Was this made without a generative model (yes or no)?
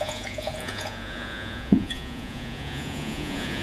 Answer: no